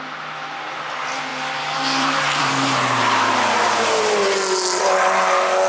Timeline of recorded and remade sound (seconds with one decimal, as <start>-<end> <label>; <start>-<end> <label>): 0.0-1.3 recorded; 1.3-2.5 remade; 2.5-5.7 recorded